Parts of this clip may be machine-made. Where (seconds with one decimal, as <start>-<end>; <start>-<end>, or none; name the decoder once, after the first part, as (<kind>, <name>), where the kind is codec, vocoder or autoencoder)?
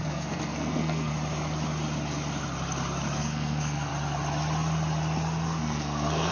0.0-1.1 (codec, SNAC); 3.2-3.9; 5.6-6.3